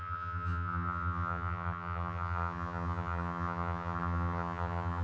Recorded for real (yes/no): no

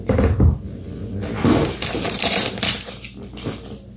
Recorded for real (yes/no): yes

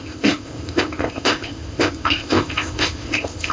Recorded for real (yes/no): no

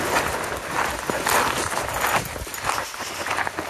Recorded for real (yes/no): yes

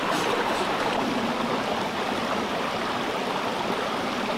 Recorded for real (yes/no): no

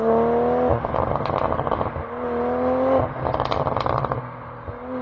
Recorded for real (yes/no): yes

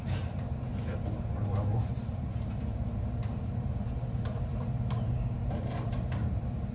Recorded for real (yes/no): no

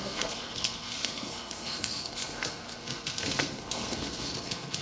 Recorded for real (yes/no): no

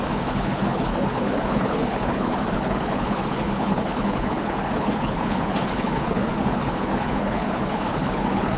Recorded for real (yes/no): no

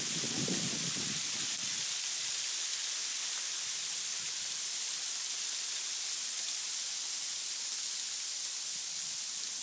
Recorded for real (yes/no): yes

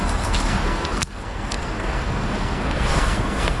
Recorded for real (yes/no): no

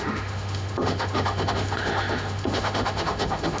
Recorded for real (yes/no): no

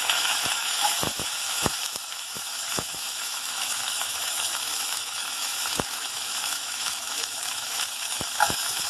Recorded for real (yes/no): no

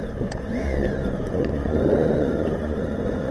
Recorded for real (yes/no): no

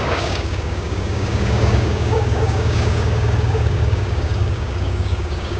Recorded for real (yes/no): no